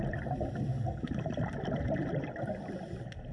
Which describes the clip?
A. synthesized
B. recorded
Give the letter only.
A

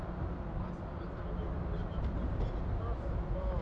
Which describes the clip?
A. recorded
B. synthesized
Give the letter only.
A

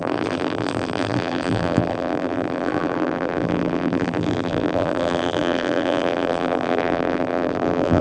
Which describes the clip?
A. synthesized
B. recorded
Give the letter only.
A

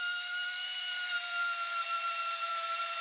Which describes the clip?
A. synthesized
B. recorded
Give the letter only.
A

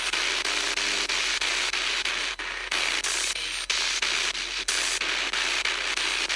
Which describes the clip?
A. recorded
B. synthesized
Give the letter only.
A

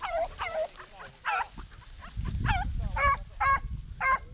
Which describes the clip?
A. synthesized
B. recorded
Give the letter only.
B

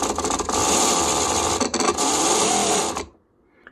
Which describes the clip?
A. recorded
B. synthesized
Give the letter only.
A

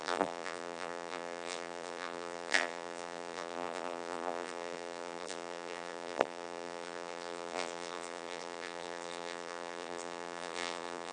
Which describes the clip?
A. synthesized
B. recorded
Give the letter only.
A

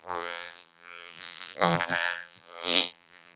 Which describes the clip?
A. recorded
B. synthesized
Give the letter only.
B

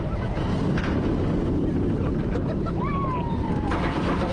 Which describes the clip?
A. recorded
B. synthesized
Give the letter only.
A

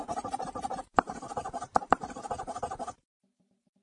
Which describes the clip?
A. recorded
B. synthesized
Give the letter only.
B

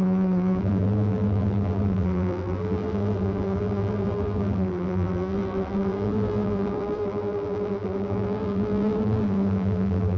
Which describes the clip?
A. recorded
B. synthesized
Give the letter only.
B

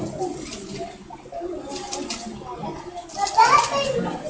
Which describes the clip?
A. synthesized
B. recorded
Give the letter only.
B